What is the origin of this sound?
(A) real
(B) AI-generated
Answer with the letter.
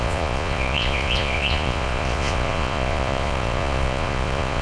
B